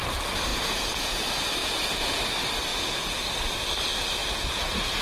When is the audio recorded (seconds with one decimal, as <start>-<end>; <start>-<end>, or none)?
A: 0.0-0.5; 1.2-1.6; 2.2-2.7; 3.2-4.2